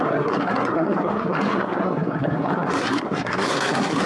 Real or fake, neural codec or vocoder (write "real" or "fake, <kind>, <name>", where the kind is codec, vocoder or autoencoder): fake, codec, SNAC